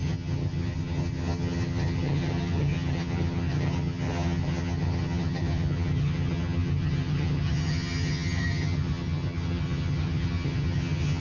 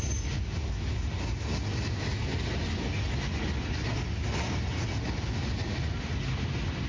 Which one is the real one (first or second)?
second